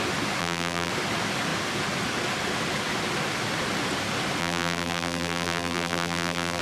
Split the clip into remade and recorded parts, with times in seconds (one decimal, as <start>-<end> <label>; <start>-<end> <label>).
0.0-0.4 recorded; 0.4-0.9 remade; 0.9-4.4 recorded; 4.4-6.6 remade